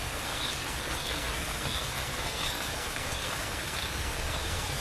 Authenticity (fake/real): fake